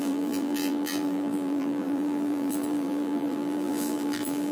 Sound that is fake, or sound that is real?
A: fake